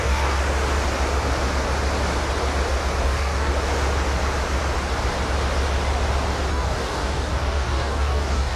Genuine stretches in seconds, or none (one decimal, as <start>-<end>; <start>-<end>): 0.4-3.0; 3.5-6.5

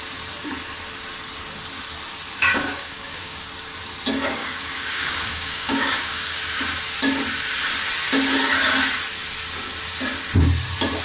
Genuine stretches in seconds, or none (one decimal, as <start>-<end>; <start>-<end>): 0.0-2.5; 3.5-4.4; 6.4-11.0

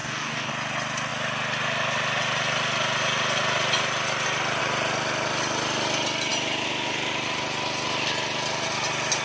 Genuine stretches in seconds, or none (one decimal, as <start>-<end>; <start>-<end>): 0.5-9.2

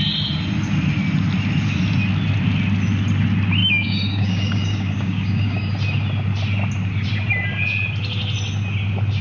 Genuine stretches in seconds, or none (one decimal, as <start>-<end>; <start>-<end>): 0.0-3.6; 5.7-9.2

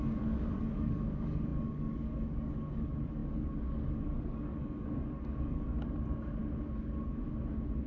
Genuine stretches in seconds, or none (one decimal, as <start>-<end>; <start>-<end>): 6.4-7.9

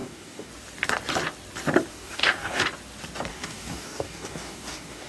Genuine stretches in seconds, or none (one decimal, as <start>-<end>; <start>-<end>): 0.5-1.9; 2.6-3.3